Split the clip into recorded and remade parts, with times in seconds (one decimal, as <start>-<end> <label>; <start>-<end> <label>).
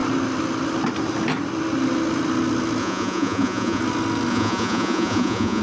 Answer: 0.0-2.8 recorded; 2.8-3.8 remade; 3.8-4.3 recorded; 4.3-5.6 remade